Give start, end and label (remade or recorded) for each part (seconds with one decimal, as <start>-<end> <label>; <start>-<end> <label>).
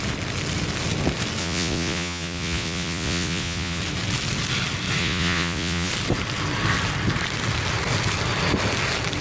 0.0-1.4 recorded; 1.4-3.8 remade; 3.8-5.0 recorded; 5.0-5.9 remade; 5.9-9.2 recorded